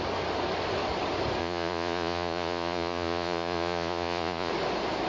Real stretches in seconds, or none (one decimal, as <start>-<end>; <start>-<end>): 0.0-1.4; 4.5-5.1